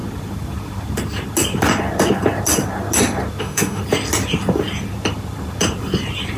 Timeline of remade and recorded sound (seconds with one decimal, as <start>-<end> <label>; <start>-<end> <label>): 0.0-3.4 recorded; 3.4-3.8 remade; 3.8-6.4 recorded